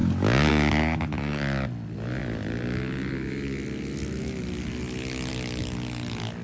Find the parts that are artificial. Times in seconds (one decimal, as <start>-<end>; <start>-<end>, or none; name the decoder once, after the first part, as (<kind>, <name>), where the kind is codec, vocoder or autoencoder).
none